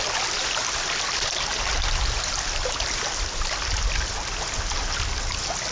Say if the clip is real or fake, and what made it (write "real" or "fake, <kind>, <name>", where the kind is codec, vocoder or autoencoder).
real